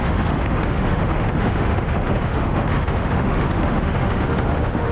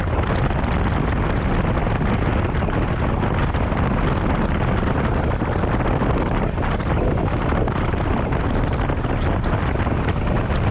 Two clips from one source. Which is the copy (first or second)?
first